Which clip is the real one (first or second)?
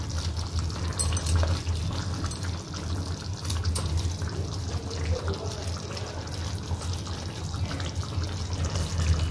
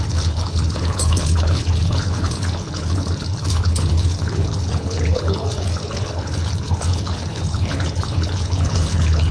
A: first